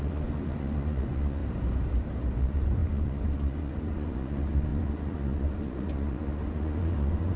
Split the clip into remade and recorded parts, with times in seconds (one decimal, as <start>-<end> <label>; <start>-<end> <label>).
0.0-1.4 remade; 1.4-2.4 recorded; 2.4-7.4 remade